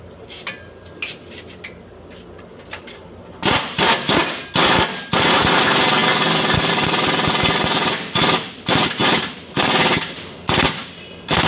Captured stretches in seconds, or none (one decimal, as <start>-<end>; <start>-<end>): 0.0-11.5